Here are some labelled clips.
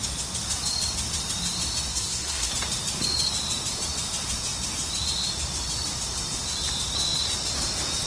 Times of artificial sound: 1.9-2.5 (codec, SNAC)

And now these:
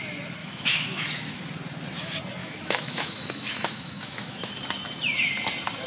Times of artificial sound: 0.4-1.4 (autoencoder, DAC-VAE); 2.4-4.5

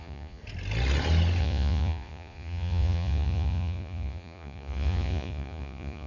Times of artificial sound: 0.0-0.4 (vocoder, Vocos); 1.4-6.1

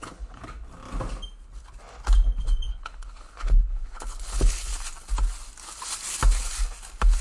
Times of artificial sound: 0.0-0.4 (codec, HILCodec); 2.7-4.7

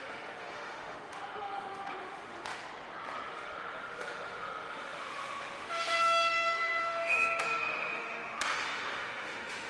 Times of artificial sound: 0.0-2.6 (autoencoder, DAC-VAE); 3.3-9.7